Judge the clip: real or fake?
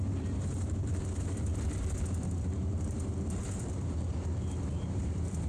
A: fake